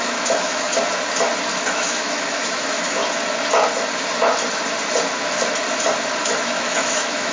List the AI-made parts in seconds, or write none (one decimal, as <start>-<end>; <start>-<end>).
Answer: 0.0-0.7; 1.5-3.0; 6.2-7.3